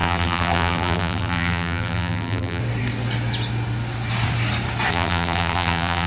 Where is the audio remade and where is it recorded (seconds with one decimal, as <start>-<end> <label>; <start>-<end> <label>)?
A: 0.0-2.6 remade; 2.6-4.9 recorded; 4.9-6.1 remade